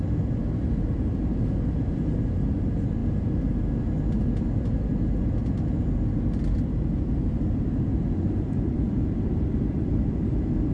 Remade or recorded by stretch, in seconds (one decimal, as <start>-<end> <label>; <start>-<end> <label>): 0.0-7.3 recorded; 7.3-10.1 remade; 10.1-10.7 recorded